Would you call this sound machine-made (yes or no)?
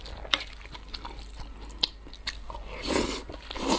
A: no